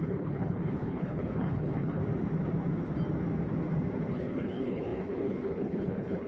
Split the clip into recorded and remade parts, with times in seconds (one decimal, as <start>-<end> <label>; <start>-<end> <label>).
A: 0.0-2.0 remade; 2.0-4.1 recorded; 4.1-6.3 remade